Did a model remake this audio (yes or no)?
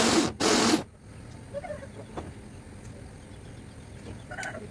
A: no